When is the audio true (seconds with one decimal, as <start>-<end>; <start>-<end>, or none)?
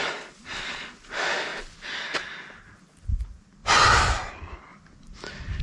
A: 0.0-3.6; 4.3-5.6